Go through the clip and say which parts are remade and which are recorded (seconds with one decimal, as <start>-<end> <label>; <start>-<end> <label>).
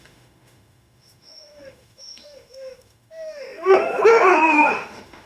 0.0-5.3 remade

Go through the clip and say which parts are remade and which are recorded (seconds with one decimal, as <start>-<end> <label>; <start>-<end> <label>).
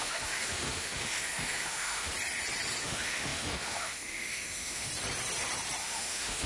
0.0-2.1 remade; 2.1-2.8 recorded; 2.8-4.9 remade; 4.9-5.8 recorded; 5.8-6.5 remade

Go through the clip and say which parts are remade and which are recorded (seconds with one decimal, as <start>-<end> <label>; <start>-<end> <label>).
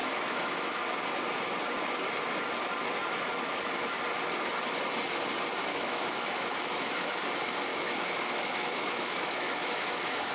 0.0-0.8 remade; 0.8-5.7 recorded; 5.7-7.1 remade; 7.1-7.7 recorded; 7.7-10.3 remade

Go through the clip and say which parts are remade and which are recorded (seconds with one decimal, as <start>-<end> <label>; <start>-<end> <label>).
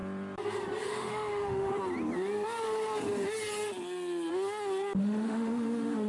0.0-0.8 recorded; 0.8-1.7 remade; 1.7-5.0 recorded; 5.0-6.1 remade